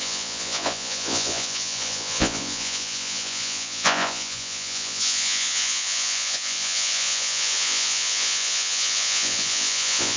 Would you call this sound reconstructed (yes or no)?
yes